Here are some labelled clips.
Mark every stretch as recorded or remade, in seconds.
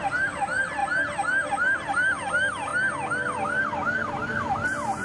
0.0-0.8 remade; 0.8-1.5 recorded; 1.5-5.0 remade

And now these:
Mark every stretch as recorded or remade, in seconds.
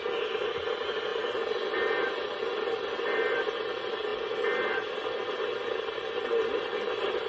0.0-7.3 recorded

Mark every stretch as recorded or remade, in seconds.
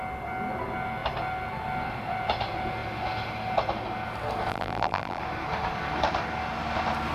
0.0-4.5 recorded; 4.5-5.2 remade; 5.2-7.1 recorded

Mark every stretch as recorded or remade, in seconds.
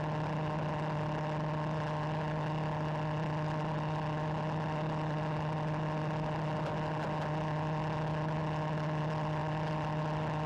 0.0-9.4 recorded; 9.4-10.0 remade; 10.0-10.5 recorded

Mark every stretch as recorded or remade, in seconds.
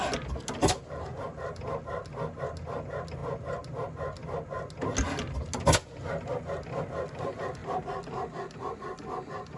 0.0-0.6 recorded; 0.6-1.6 remade; 1.6-9.6 recorded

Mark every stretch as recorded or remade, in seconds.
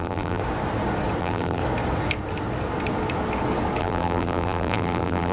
0.0-0.4 remade; 0.4-1.2 recorded; 1.2-1.6 remade; 1.6-3.8 recorded; 3.8-5.3 remade